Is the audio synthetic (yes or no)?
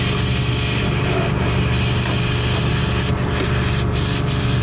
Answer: no